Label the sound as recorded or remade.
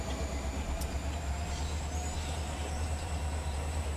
remade